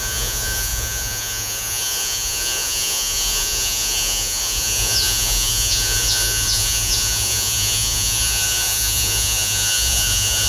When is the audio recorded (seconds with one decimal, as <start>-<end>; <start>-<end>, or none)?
none